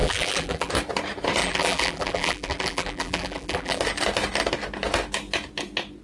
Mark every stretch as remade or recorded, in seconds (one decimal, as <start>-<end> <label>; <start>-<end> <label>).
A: 0.0-0.7 remade; 0.7-1.4 recorded; 1.4-3.8 remade; 3.8-6.0 recorded